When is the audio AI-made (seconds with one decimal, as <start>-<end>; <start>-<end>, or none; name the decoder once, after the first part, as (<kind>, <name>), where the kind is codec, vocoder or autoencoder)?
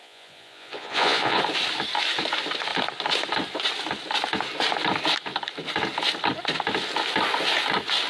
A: 0.0-1.4 (vocoder, Vocos)